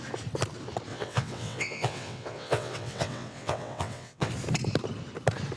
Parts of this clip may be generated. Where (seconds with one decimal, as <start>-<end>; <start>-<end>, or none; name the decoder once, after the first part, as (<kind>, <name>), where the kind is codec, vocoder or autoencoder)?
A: 0.9-4.3 (vocoder, WaveNeXt)